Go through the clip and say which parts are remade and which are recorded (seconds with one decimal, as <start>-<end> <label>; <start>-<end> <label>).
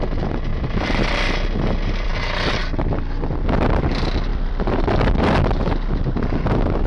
0.0-0.5 recorded; 0.5-1.3 remade; 1.3-4.3 recorded; 4.3-5.2 remade; 5.2-6.9 recorded